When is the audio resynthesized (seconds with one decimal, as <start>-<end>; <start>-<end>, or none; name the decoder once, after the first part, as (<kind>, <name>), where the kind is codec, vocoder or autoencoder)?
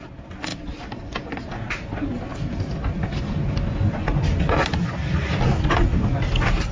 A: none